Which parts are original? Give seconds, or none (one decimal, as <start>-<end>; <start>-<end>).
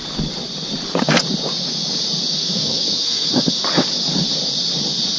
0.0-2.4; 3.5-5.2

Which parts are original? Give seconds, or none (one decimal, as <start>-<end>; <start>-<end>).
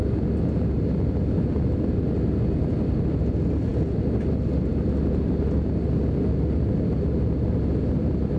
0.0-8.4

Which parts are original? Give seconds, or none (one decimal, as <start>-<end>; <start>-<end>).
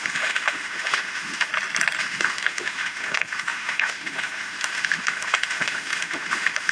1.5-2.0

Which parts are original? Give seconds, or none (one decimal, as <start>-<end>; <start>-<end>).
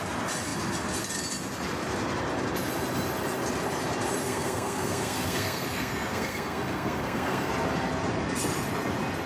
0.0-4.2; 7.5-9.3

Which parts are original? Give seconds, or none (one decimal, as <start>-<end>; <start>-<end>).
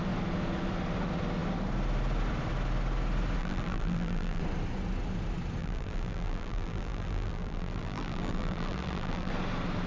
0.0-3.4; 4.4-5.6; 9.3-9.9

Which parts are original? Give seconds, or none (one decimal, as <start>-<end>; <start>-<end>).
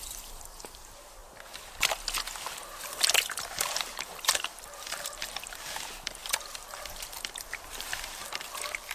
1.2-3.4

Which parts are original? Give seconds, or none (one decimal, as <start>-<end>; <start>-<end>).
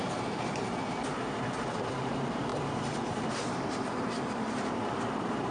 1.0-1.7